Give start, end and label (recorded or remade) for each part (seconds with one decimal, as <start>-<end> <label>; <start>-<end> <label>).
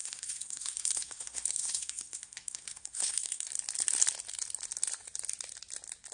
0.0-3.5 remade; 3.5-6.1 recorded